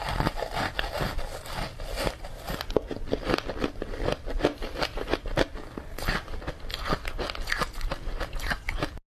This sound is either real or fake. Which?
real